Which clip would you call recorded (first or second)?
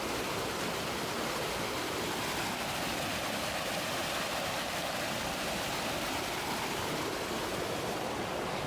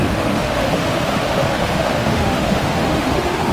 first